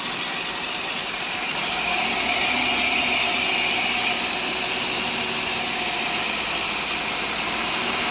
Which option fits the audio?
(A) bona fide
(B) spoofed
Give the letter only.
A